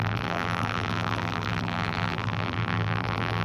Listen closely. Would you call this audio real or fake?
fake